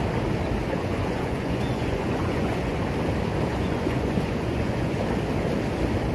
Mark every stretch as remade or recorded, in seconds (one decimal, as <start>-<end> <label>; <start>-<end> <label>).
0.0-0.6 recorded; 0.6-2.8 remade; 2.8-3.5 recorded; 3.5-5.0 remade; 5.0-6.1 recorded